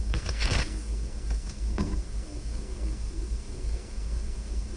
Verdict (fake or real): fake